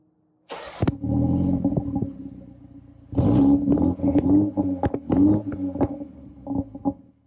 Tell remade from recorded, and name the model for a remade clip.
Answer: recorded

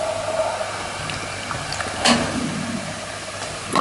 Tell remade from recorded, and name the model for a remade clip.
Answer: recorded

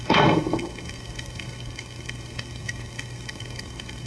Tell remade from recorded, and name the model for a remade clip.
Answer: remade, codec, SNAC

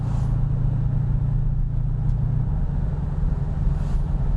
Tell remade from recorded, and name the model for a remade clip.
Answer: recorded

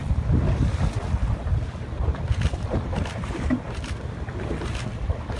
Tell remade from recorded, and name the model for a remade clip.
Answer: recorded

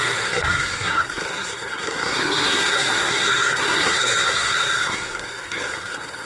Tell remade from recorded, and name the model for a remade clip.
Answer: remade, codec, SNAC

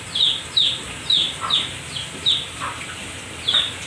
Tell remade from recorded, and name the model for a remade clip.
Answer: recorded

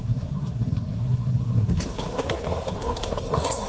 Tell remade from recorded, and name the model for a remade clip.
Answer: remade, codec, SNAC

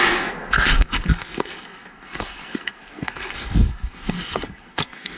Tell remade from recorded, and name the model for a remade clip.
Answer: remade, codec, SNAC